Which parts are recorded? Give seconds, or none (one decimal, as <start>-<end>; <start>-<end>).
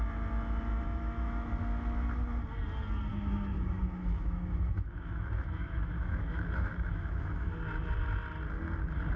0.0-0.7; 1.5-3.1; 7.5-9.2